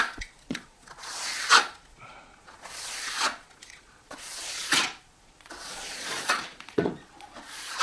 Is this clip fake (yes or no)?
yes